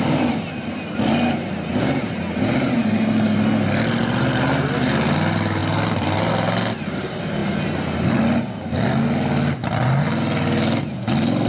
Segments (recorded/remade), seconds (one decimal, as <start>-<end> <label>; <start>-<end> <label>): 0.0-11.5 recorded